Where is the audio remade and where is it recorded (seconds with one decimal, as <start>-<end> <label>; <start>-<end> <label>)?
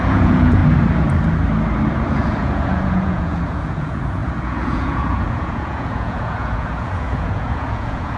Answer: 0.0-0.6 remade; 0.6-1.9 recorded; 1.9-8.2 remade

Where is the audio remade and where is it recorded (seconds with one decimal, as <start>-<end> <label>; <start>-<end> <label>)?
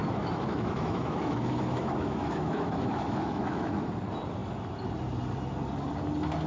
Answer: 0.0-3.9 remade; 3.9-6.5 recorded